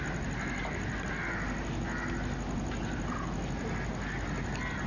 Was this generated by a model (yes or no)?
no